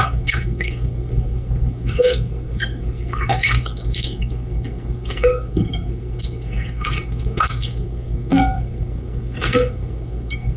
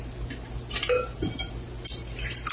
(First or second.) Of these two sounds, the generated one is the first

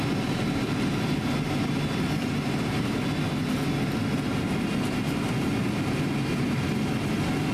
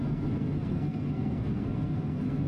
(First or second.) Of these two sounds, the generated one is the second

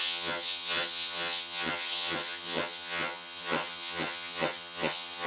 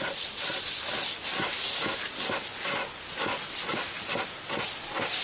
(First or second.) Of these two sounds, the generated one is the first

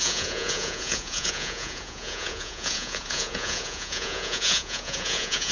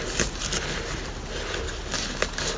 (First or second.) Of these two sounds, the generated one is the first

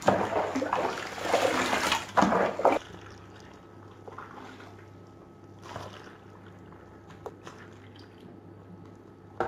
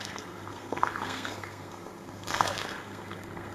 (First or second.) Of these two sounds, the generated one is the second